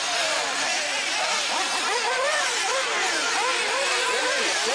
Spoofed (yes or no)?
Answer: yes